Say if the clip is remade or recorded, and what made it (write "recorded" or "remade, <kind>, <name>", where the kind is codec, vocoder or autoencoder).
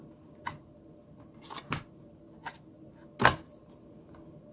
recorded